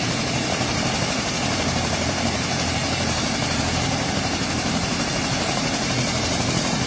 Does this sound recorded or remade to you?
remade